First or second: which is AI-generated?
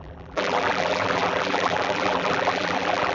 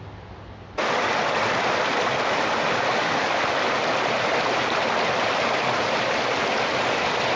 first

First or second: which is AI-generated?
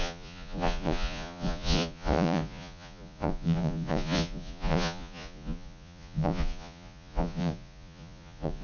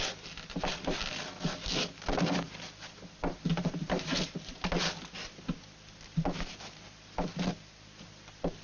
first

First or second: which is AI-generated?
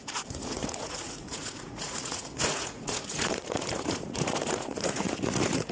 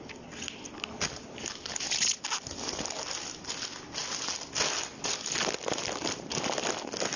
first